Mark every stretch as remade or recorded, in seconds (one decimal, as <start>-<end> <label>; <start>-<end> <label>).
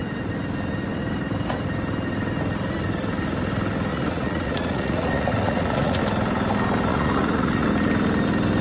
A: 0.0-3.9 recorded; 3.9-6.0 remade; 6.0-6.9 recorded; 6.9-7.7 remade; 7.7-8.6 recorded